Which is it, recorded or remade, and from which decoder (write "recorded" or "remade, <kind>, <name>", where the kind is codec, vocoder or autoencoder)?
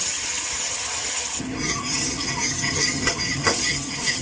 remade, vocoder, HiFi-GAN